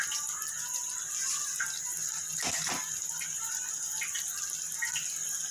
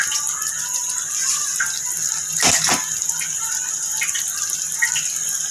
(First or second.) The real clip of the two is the first